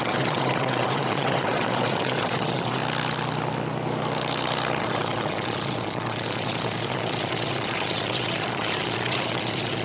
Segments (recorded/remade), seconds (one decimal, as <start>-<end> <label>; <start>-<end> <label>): 0.0-2.8 remade; 2.8-4.8 recorded; 4.8-9.8 remade